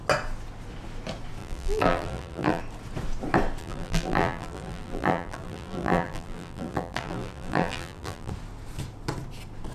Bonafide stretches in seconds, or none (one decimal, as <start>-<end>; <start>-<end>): 0.0-1.4; 2.6-3.6; 8.3-9.7